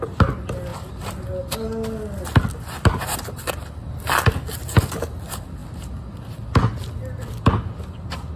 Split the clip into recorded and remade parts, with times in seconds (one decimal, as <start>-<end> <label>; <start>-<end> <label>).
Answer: 0.0-8.4 recorded

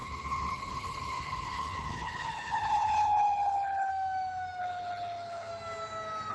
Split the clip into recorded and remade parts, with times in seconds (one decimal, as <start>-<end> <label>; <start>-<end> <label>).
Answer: 0.0-3.9 remade; 3.9-4.6 recorded; 4.6-5.5 remade; 5.5-6.3 recorded